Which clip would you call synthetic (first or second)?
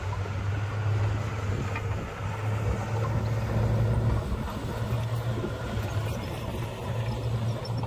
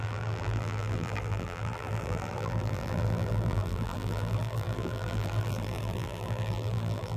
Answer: second